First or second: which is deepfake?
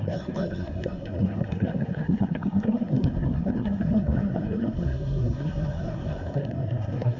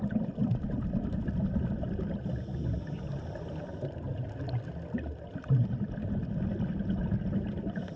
first